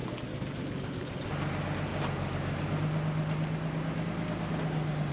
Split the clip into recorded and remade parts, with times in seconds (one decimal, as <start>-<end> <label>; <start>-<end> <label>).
0.0-5.1 recorded